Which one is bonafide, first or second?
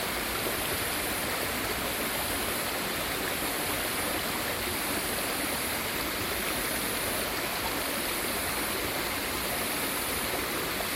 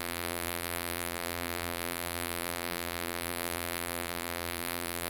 first